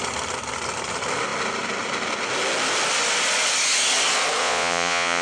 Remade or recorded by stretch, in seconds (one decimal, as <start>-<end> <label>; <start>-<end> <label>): 0.0-4.4 recorded; 4.4-5.2 remade